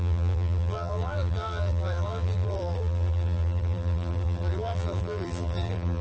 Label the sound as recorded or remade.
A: remade